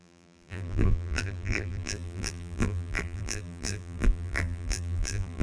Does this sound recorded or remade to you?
remade